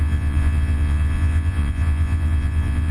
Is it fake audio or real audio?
fake